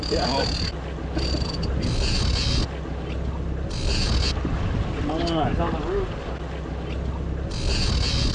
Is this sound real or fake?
real